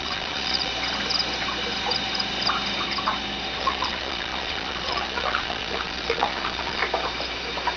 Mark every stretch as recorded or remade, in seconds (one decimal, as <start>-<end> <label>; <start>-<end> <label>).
0.0-0.7 remade; 0.7-3.6 recorded; 3.6-6.8 remade; 6.8-7.8 recorded